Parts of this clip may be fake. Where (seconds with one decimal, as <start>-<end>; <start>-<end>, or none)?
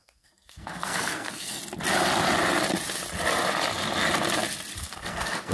0.0-1.6; 4.8-5.5